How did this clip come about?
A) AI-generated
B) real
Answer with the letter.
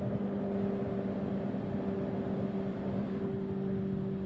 B